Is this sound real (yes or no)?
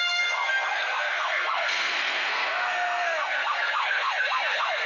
no